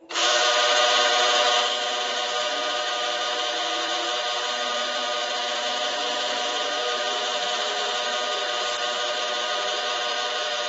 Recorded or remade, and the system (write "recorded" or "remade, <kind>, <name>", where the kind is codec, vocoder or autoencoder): remade, vocoder, BigVGAN v2